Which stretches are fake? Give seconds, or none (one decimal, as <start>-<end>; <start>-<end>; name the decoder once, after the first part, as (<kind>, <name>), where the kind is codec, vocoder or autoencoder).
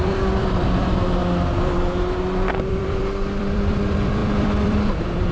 0.0-1.2 (vocoder, BigVGAN v2); 2.5-5.3